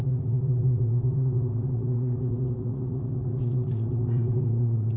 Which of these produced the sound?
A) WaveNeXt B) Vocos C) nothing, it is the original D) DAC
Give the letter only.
B